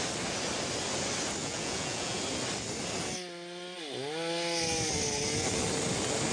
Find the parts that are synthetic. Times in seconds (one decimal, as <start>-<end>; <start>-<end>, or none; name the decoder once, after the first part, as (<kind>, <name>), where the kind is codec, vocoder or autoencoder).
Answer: 1.4-2.2 (vocoder, Vocos)